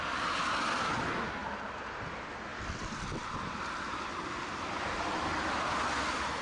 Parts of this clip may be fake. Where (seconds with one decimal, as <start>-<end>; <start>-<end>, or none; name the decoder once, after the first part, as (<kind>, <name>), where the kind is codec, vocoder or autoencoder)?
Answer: 2.5-5.5 (vocoder, BigVGAN v2)